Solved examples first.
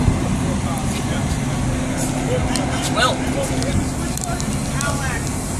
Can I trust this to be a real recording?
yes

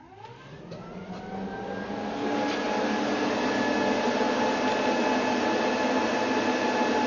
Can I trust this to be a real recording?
yes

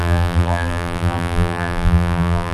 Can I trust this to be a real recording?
no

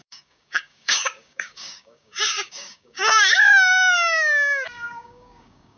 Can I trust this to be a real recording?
no